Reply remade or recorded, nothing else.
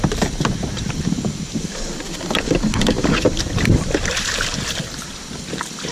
remade